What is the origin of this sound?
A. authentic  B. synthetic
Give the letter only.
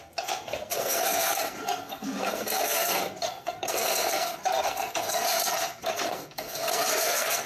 B